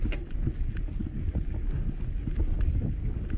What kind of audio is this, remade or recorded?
recorded